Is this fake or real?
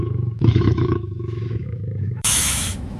fake